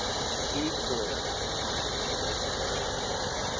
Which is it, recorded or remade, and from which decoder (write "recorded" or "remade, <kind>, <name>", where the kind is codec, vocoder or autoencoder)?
remade, vocoder, BigVGAN v2